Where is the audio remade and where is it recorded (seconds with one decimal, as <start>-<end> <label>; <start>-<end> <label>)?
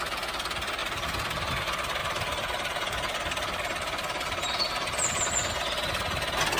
0.0-0.8 recorded; 0.8-1.5 remade; 1.5-2.0 recorded; 2.0-5.3 remade; 5.3-6.6 recorded